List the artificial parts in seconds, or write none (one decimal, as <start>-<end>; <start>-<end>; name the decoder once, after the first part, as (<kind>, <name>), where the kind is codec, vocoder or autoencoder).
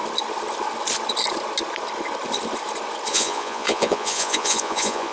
3.1-5.1 (vocoder, Vocos)